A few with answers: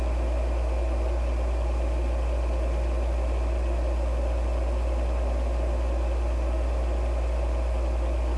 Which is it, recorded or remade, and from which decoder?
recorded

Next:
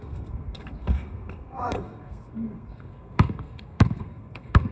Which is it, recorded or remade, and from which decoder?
remade, codec, SNAC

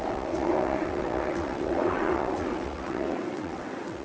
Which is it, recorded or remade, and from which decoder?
remade, vocoder, WaveNeXt